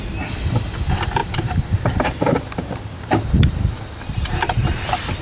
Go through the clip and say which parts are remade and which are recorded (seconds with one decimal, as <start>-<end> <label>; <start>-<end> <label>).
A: 0.0-1.2 recorded; 1.2-4.3 remade; 4.3-5.2 recorded